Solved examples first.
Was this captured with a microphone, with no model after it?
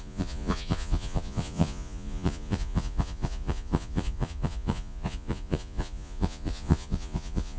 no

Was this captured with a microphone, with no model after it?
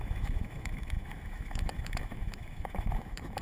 no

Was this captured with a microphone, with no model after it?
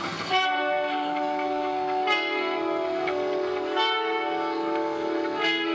no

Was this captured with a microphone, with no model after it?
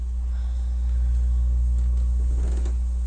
yes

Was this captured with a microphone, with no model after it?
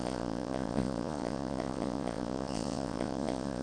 no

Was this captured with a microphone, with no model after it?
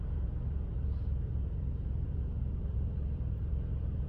no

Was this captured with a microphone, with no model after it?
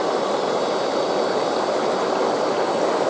yes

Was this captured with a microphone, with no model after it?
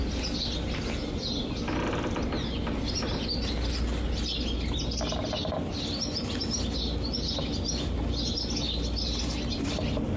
yes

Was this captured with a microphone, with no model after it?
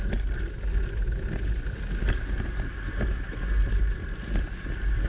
yes